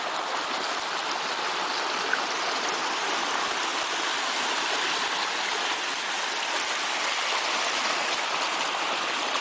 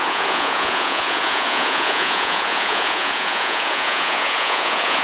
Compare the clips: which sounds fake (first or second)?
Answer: second